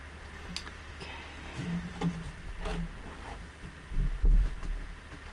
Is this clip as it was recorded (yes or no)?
yes